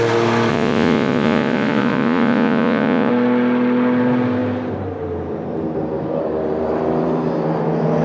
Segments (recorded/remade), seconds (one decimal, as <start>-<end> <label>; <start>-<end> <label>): 0.0-0.5 recorded; 0.5-3.1 remade; 3.1-8.0 recorded